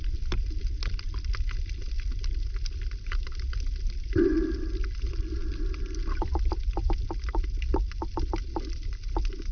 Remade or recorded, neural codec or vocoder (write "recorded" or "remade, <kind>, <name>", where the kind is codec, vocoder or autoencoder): recorded